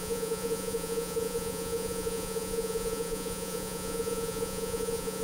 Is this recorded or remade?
remade